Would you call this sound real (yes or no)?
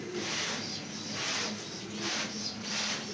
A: yes